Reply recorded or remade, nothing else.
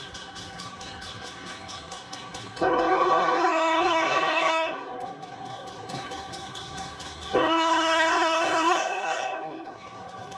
remade